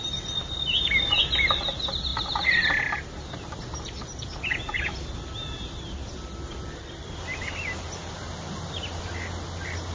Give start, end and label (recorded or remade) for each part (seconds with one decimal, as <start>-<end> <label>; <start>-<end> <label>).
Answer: 0.0-9.9 recorded